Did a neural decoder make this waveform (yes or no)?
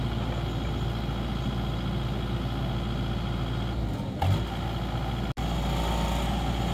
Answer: no